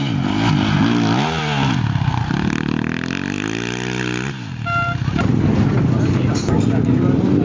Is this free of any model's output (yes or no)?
yes